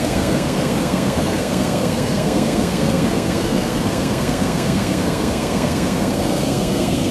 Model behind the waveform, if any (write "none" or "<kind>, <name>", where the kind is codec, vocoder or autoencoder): codec, SNAC